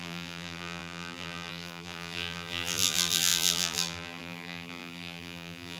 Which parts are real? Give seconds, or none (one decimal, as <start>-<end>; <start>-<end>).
none